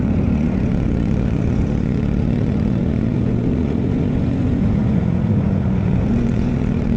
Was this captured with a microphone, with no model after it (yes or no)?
no